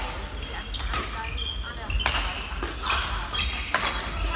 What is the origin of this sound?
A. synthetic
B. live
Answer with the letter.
B